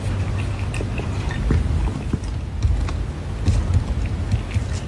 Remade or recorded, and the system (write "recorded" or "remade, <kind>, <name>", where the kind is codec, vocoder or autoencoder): recorded